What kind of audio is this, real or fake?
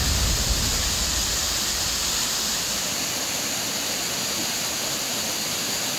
real